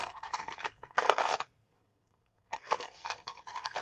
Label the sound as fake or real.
fake